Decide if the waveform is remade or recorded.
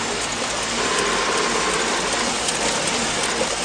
recorded